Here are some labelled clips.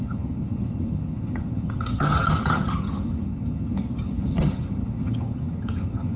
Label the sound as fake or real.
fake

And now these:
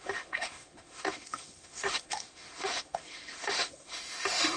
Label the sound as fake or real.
fake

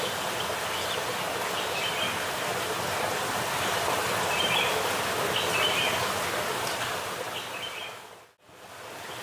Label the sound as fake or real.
real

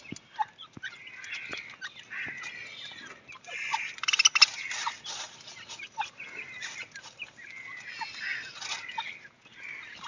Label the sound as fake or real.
real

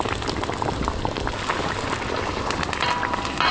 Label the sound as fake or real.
real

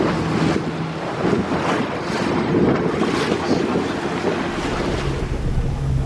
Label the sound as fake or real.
real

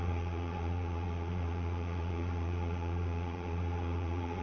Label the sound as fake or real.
fake